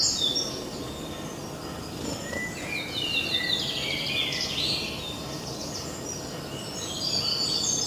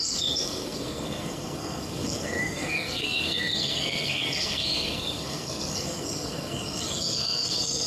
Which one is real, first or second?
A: first